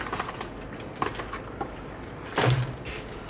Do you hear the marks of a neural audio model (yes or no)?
no